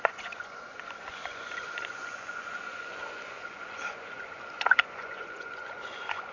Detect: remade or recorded remade